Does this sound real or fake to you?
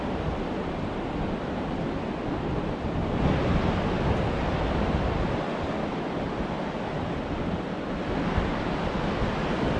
real